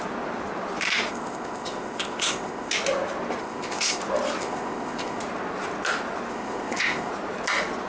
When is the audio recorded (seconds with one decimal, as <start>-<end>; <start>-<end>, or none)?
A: 0.0-1.1; 2.7-3.4; 4.0-4.4; 5.2-6.3; 7.1-7.9